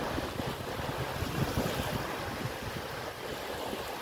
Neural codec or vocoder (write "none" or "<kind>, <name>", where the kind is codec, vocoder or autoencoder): none